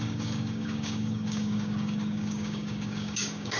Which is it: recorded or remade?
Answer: remade